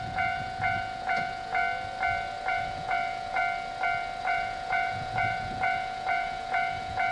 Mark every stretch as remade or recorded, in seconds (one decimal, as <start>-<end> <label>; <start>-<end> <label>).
0.0-1.6 remade; 1.6-2.5 recorded; 2.5-3.4 remade; 3.4-4.2 recorded; 4.2-7.1 remade